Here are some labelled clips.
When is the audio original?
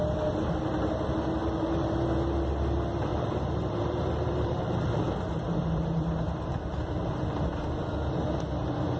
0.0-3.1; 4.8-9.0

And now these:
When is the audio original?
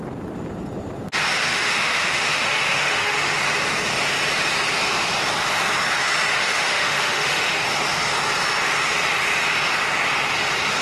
0.0-1.5; 3.3-6.3; 7.6-10.8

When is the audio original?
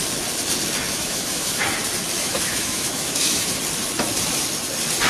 0.0-0.9; 1.6-2.2; 3.6-5.1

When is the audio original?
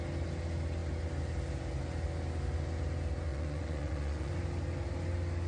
0.0-3.3; 4.3-5.5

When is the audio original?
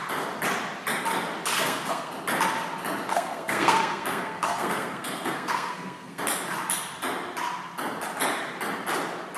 0.0-1.5; 2.1-3.1; 6.2-9.4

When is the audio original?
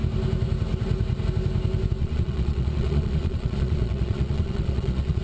0.0-2.0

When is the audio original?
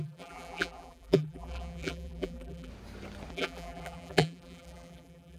2.7-3.3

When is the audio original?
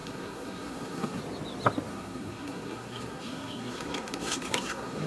1.2-1.9